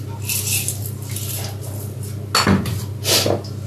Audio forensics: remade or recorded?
recorded